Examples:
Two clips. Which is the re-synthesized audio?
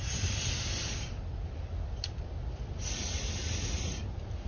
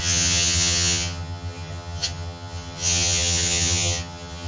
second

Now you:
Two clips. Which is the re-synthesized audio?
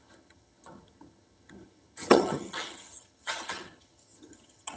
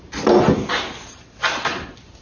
first